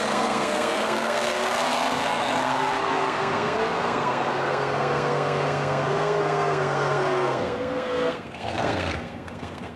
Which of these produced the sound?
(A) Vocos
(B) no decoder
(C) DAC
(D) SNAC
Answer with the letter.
D